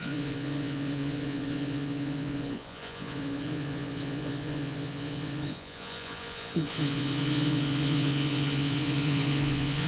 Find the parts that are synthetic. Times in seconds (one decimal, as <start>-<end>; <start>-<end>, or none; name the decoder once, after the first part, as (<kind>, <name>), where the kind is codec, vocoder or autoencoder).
0.0-9.9 (vocoder, Vocos)